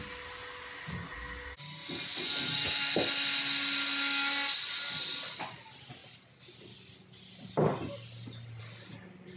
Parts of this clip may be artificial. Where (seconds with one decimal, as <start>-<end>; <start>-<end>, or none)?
none